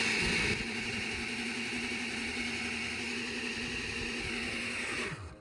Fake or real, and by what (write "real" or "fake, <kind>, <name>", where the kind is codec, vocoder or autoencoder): real